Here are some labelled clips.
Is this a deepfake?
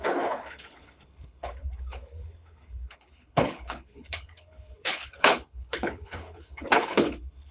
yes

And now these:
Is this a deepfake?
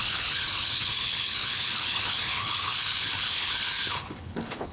yes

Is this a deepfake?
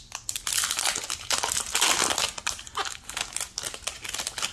no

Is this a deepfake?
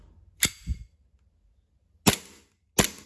no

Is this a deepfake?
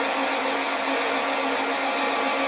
no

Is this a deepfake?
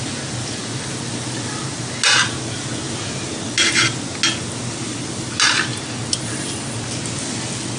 no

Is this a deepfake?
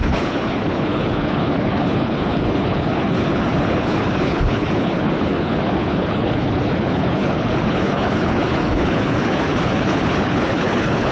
yes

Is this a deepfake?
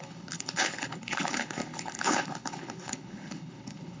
yes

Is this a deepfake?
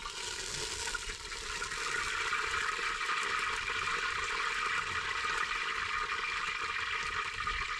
no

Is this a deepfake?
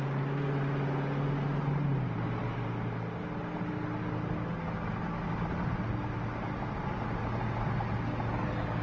no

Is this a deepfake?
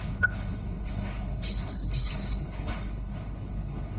yes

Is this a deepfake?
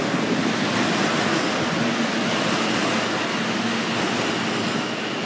no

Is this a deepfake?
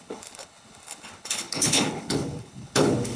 yes